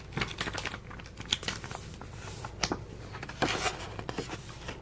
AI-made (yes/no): no